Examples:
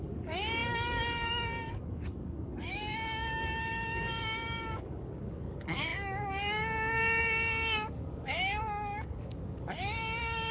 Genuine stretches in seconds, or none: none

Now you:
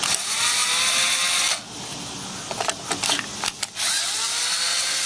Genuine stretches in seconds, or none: 0.0-5.1

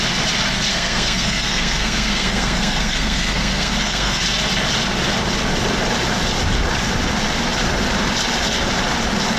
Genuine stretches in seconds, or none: 0.0-0.7; 4.2-9.4